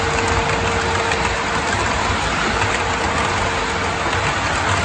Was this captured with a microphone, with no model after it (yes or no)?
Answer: yes